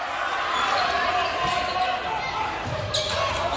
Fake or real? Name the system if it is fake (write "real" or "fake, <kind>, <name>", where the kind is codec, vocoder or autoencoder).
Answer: real